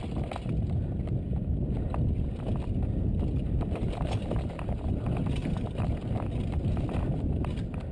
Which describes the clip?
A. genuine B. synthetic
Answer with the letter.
A